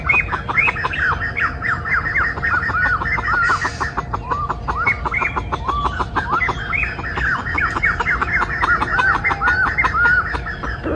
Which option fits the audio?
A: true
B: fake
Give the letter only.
A